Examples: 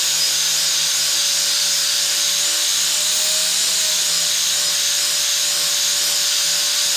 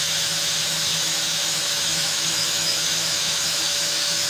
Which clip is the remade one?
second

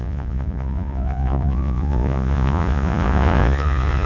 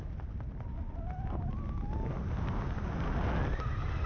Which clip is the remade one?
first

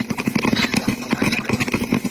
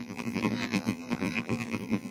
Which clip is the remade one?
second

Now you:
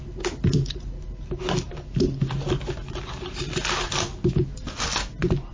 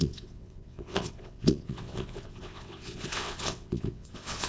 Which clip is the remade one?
second